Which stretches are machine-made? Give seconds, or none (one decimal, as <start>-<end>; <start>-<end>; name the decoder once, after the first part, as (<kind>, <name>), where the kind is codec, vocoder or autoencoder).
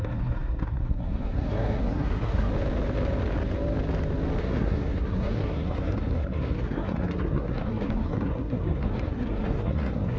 0.0-2.5 (codec, SNAC); 4.4-10.2